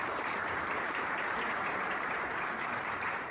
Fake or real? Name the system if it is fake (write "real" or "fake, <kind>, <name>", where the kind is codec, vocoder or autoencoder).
fake, vocoder, BigVGAN v2